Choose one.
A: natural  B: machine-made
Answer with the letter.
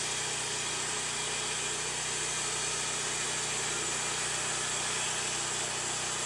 A